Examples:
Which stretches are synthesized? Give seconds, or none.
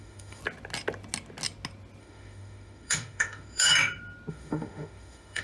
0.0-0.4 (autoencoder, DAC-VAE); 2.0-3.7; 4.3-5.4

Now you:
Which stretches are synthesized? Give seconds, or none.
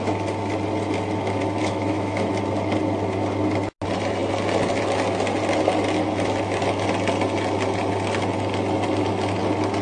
1.6-2.3 (autoencoder, DAC-VAE)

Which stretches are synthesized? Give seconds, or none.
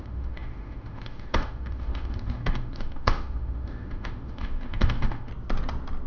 0.0-5.3 (autoencoder, DAC-VAE)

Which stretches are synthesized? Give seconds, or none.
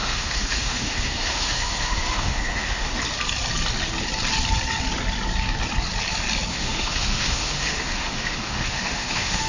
0.0-3.0 (autoencoder, DAC-VAE); 6.5-9.5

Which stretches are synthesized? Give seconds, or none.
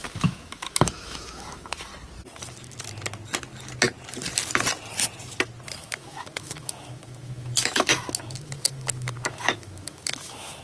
0.0-1.9 (autoencoder, DAC-VAE); 5.8-10.6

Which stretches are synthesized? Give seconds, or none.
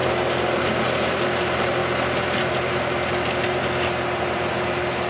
none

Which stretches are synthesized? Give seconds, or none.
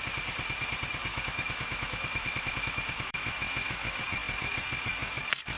1.1-4.0 (autoencoder, DAC-VAE)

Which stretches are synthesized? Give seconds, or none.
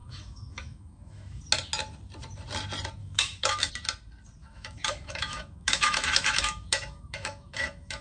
0.0-1.4 (autoencoder, DAC-VAE); 3.0-3.7; 4.4-8.0